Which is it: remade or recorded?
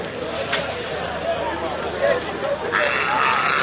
recorded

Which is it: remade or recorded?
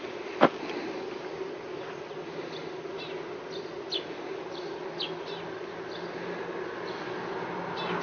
recorded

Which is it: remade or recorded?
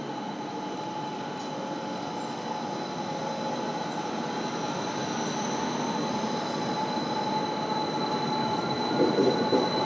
recorded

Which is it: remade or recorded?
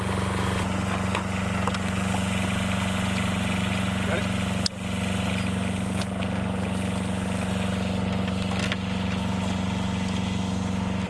recorded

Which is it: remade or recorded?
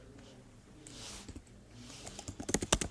recorded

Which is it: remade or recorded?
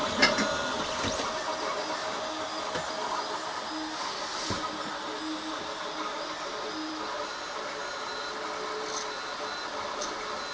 recorded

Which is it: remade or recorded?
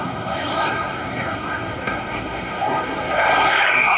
remade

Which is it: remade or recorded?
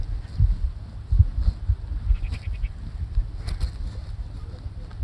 recorded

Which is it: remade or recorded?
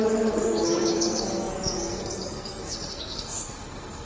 remade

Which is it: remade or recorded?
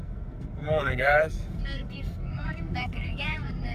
remade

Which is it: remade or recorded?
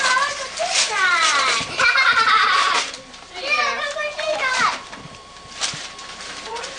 remade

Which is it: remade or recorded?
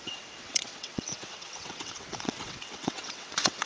remade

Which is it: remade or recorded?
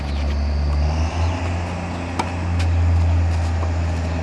recorded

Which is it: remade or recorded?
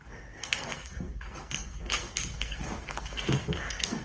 remade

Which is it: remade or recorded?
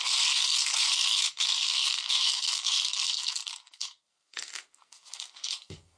remade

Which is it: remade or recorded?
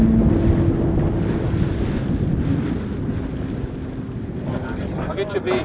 recorded